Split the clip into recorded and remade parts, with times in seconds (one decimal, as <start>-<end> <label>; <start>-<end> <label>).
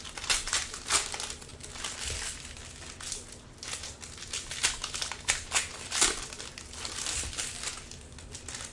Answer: 0.0-8.7 recorded